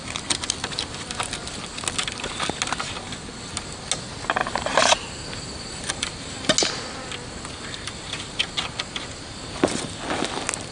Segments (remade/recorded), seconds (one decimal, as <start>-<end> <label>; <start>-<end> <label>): 0.0-4.4 recorded; 4.4-6.5 remade; 6.5-10.7 recorded